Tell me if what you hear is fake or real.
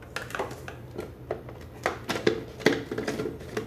real